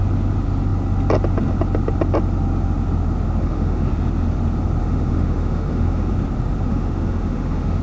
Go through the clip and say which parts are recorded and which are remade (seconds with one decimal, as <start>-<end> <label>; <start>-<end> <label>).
0.0-3.4 recorded; 3.4-3.9 remade; 3.9-4.8 recorded; 4.8-6.1 remade; 6.1-6.7 recorded; 6.7-7.8 remade